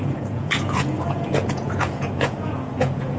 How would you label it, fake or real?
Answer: fake